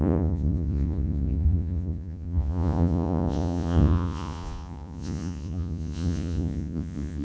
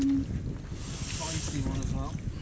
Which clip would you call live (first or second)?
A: second